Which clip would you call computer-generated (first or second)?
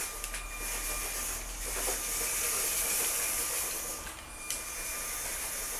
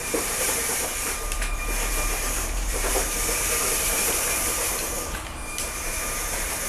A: second